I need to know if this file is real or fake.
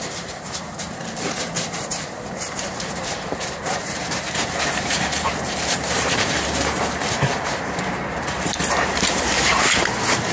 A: fake